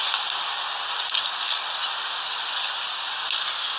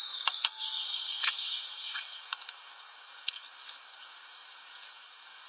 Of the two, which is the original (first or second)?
first